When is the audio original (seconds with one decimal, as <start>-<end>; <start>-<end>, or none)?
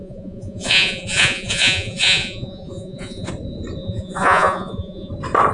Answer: 3.3-3.8; 5.1-5.5